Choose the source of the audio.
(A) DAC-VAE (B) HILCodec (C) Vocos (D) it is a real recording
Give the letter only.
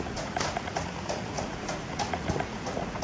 C